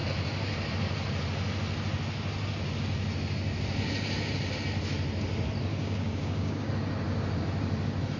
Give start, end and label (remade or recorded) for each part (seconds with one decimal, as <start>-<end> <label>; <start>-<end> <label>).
0.0-5.7 recorded; 5.7-6.7 remade; 6.7-8.2 recorded